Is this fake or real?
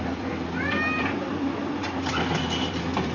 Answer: fake